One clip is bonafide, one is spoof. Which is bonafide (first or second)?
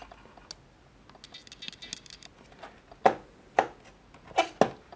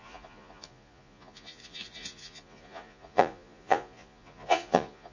first